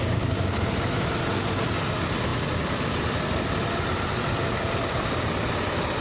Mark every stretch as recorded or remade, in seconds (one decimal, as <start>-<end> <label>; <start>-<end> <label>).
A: 0.0-6.0 recorded

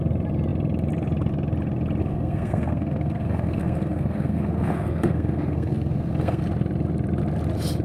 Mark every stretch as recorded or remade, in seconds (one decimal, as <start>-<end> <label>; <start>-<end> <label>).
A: 0.0-2.0 recorded; 2.0-6.4 remade; 6.4-7.8 recorded

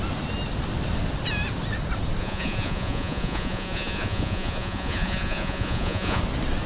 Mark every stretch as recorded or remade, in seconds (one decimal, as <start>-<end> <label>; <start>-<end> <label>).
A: 0.0-2.2 recorded; 2.2-6.2 remade; 6.2-6.7 recorded

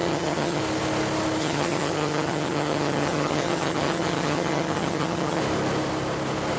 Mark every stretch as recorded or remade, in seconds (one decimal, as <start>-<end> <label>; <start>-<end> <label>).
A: 0.0-0.6 remade; 0.6-1.4 recorded; 1.4-5.4 remade; 5.4-6.6 recorded